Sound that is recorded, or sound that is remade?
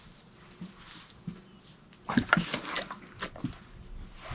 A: recorded